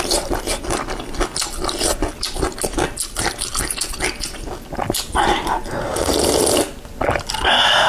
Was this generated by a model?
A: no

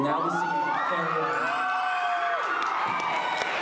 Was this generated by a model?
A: no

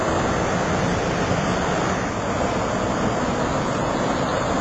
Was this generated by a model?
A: no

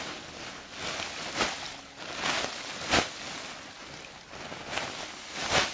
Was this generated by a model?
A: no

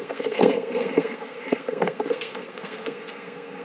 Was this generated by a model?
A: yes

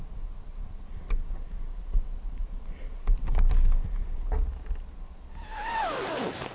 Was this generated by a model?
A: no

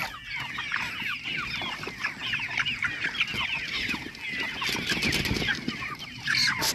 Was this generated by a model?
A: no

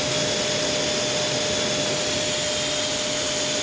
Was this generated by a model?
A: no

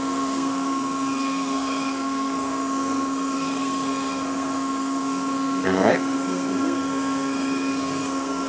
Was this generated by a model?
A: yes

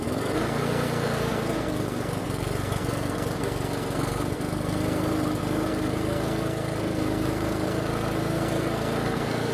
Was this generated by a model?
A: yes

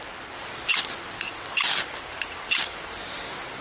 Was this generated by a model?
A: no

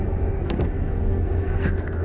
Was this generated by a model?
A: yes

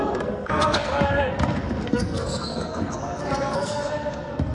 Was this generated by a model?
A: yes